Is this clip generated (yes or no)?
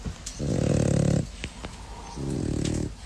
no